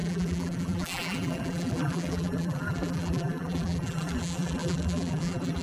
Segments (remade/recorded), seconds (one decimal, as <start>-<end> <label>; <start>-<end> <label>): 0.0-5.6 remade